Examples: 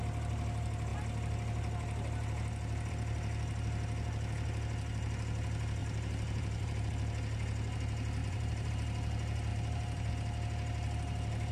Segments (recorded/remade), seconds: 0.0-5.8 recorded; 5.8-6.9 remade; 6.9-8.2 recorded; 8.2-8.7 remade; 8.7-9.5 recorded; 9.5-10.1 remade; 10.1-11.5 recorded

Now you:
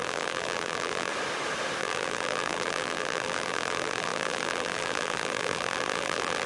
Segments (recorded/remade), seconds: 0.0-1.1 remade; 1.1-1.8 recorded; 1.8-6.5 remade

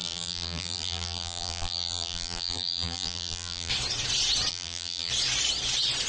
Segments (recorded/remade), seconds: 0.0-3.7 remade; 3.7-4.5 recorded; 4.5-5.1 remade; 5.1-6.1 recorded